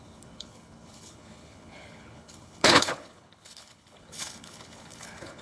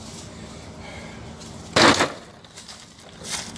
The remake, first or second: first